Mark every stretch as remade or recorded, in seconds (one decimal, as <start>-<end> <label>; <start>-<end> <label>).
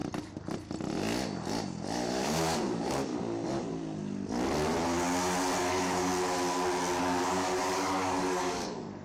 0.0-2.1 recorded; 2.1-3.1 remade; 3.1-5.6 recorded; 5.6-6.1 remade; 6.1-7.0 recorded; 7.0-9.0 remade